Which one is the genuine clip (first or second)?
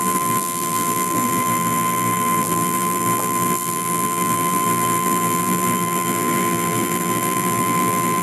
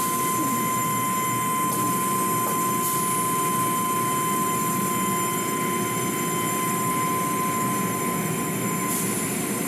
second